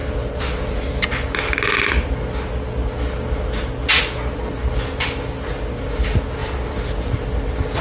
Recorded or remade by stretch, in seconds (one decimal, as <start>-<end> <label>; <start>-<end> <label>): 0.0-7.8 recorded